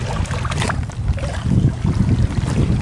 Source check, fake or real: real